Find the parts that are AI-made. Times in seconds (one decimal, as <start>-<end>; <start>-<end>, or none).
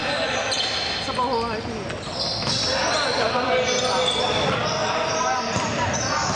4.8-6.3